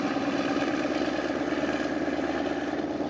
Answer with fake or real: real